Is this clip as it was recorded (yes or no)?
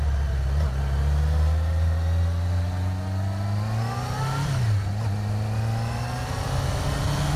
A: yes